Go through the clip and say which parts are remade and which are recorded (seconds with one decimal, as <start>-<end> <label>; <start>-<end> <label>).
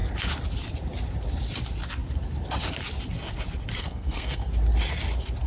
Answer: 0.0-3.8 recorded; 3.8-4.5 remade; 4.5-5.5 recorded